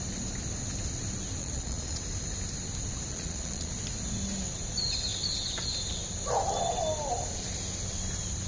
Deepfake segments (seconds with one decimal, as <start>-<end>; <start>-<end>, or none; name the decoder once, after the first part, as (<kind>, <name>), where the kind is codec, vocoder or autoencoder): 1.4-2.0 (vocoder, Vocos); 3.1-3.7